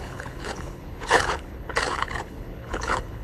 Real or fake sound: fake